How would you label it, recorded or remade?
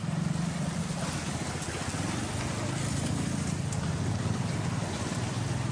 recorded